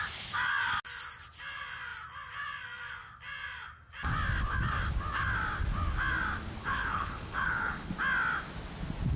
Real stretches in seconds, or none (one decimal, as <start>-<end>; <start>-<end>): 0.0-6.6; 7.9-9.2